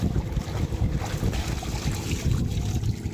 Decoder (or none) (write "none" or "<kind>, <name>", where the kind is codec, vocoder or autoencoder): none